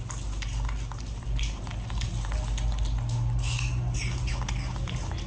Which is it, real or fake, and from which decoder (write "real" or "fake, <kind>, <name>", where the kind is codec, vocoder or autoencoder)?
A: real